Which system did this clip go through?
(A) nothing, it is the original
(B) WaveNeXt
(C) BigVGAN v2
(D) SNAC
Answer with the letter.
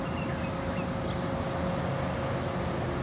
A